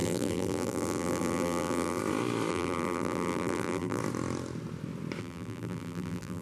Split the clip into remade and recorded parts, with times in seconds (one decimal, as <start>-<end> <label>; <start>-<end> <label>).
0.0-2.0 remade; 2.0-2.5 recorded; 2.5-4.0 remade; 4.0-5.2 recorded; 5.2-6.4 remade